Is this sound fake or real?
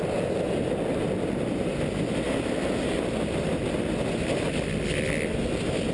real